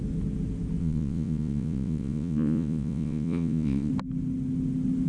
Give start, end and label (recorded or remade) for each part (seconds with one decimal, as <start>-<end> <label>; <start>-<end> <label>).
0.0-0.8 recorded; 0.8-3.9 remade; 3.9-5.1 recorded